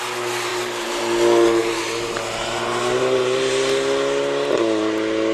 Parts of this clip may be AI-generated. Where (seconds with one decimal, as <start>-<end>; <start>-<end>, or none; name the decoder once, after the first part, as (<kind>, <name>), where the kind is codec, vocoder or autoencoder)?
0.5-1.0 (vocoder, BigVGAN v2)

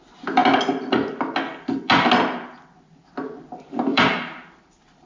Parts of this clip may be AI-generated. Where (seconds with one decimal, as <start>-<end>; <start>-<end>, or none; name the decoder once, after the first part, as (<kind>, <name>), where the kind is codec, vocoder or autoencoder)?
3.9-4.5 (vocoder, BigVGAN v2)

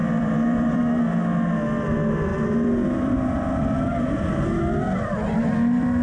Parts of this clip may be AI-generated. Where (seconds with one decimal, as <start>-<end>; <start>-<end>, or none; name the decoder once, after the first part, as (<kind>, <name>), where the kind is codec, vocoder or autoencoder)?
0.0-0.8 (vocoder, BigVGAN v2); 2.3-4.6

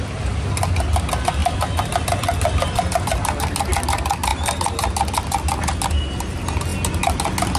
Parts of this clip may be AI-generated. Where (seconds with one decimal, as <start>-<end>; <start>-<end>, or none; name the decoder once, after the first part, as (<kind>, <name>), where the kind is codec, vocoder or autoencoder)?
1.4-3.4 (vocoder, BigVGAN v2)

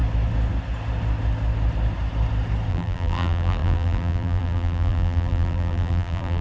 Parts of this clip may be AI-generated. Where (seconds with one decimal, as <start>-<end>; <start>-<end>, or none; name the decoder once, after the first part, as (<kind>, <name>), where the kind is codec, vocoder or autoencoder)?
2.7-6.4 (vocoder, BigVGAN v2)

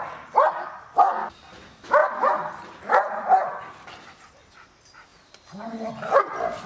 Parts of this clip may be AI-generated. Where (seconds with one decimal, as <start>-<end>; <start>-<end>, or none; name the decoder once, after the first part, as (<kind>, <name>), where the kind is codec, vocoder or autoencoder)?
2.0-3.9 (vocoder, BigVGAN v2); 5.1-5.9

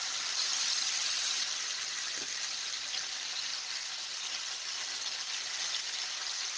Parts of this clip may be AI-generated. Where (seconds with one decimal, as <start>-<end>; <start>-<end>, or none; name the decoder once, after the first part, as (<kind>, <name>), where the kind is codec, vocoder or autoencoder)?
0.0-6.6 (vocoder, BigVGAN v2)